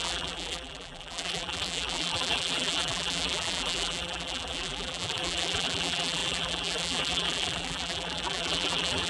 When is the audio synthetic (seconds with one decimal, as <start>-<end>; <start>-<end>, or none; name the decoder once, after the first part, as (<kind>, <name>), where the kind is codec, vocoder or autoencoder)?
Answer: 0.0-9.1 (vocoder, BigVGAN v2)